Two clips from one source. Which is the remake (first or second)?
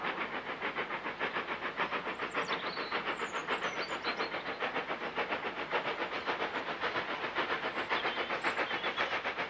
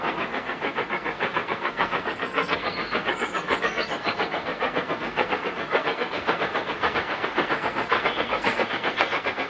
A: second